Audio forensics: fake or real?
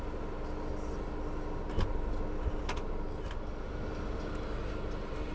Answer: real